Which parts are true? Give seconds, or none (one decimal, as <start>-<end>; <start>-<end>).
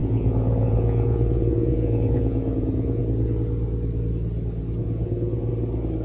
3.0-4.8; 5.5-6.0